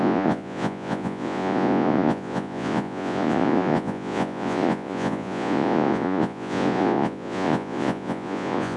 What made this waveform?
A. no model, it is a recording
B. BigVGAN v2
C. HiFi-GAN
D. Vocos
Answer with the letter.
D